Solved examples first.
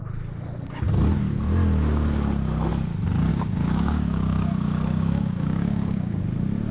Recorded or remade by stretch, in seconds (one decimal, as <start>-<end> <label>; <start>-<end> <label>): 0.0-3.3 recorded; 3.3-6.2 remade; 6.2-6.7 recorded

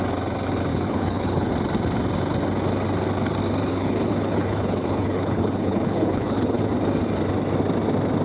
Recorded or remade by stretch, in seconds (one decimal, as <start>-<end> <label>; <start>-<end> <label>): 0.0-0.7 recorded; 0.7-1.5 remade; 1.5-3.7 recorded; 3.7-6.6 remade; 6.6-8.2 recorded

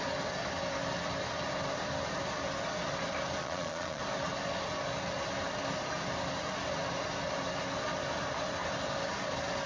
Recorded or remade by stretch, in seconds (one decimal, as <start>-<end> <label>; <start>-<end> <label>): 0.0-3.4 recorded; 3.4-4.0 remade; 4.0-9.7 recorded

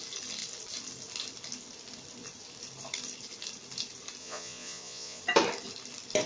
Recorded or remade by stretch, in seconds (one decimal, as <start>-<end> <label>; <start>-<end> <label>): 0.0-4.2 recorded; 4.2-5.2 remade; 5.2-6.3 recorded

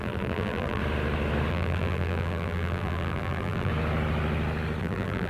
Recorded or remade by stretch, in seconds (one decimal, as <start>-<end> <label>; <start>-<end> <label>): 0.0-0.8 remade; 0.8-1.5 recorded; 1.5-3.7 remade; 3.7-4.8 recorded; 4.8-5.3 remade